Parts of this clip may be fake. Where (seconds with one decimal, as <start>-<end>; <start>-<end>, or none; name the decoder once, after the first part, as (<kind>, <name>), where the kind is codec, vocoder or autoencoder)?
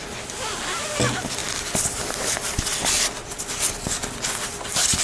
1.4-3.5 (vocoder, BigVGAN v2)